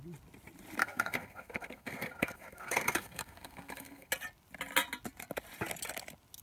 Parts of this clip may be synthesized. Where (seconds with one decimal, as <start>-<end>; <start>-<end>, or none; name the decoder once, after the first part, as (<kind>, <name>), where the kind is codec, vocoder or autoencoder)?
0.8-4.1 (codec, SNAC)